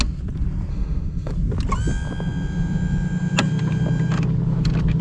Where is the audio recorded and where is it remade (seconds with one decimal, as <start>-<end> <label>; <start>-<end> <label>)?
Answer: 0.0-0.7 recorded; 0.7-1.3 remade; 1.3-5.0 recorded